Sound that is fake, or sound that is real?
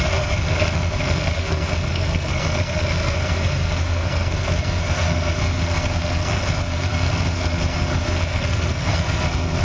fake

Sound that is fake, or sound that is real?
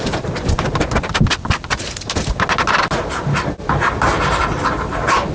real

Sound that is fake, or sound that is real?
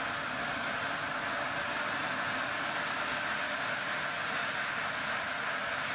real